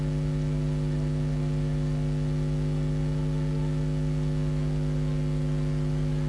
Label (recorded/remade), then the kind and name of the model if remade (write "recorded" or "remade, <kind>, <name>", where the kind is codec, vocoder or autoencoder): recorded